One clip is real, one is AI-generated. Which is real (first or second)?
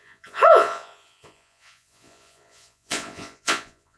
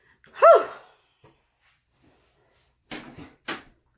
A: second